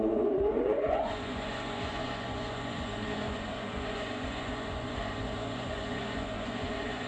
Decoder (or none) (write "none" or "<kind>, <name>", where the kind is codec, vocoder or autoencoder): vocoder, Vocos